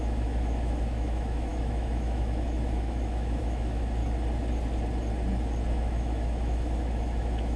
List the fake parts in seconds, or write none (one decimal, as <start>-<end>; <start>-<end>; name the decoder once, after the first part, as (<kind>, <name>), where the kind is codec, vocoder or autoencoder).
0.0-4.0 (autoencoder, DAC-VAE); 5.7-7.6

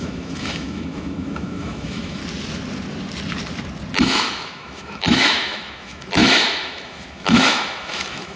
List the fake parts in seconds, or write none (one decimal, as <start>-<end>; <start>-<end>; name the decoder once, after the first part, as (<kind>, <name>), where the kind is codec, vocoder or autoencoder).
0.0-2.2 (autoencoder, DAC-VAE); 4.0-8.4

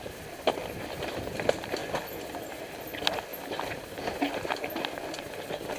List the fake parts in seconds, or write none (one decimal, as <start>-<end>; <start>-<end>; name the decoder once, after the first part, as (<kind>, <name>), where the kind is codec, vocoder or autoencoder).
none